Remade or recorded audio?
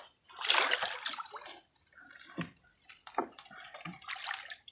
recorded